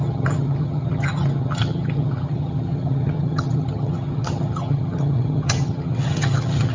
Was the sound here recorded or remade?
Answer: remade